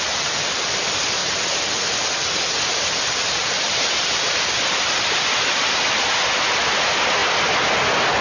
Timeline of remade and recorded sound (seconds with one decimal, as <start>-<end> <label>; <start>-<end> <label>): 0.0-8.2 recorded